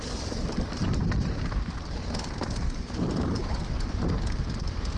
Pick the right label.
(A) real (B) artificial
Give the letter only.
B